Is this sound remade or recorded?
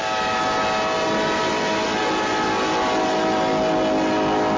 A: recorded